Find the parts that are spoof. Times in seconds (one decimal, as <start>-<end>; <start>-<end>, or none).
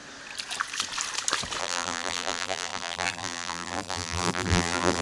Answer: 1.6-5.0